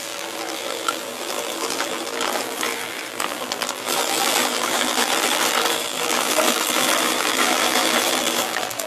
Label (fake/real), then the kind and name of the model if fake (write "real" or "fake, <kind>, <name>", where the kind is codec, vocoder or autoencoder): fake, vocoder, BigVGAN v2